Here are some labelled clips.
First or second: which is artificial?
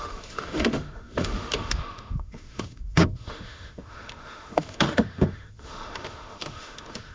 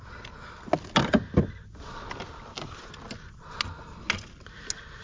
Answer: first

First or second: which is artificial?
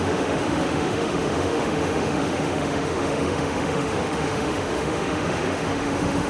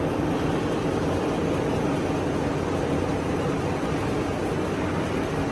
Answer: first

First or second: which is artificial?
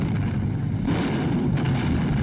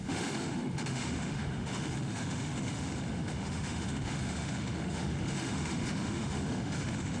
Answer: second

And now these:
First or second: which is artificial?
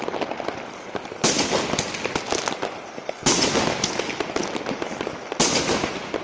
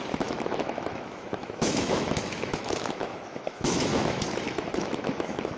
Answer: second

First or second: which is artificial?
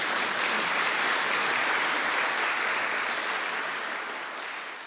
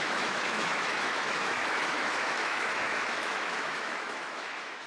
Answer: second